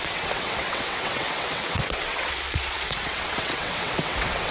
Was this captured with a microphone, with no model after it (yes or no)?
no